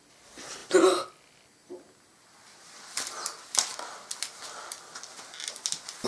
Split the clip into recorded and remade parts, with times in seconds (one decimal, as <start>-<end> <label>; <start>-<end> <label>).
0.0-6.1 recorded